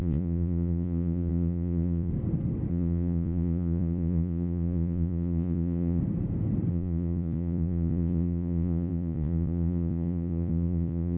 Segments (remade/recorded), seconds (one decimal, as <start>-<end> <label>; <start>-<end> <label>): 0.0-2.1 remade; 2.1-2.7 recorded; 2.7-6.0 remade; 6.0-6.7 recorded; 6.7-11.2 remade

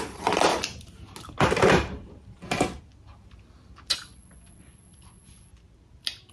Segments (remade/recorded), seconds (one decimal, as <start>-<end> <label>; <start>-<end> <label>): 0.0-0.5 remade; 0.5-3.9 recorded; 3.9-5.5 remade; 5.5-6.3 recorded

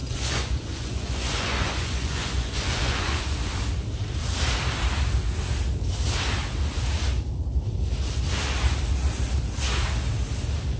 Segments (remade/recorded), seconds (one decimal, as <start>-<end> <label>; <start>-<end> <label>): 0.0-3.5 remade; 3.5-10.8 recorded